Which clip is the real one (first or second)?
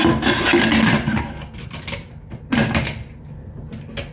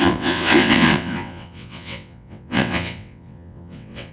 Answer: first